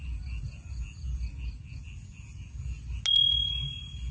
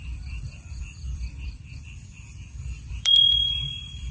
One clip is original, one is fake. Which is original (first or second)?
first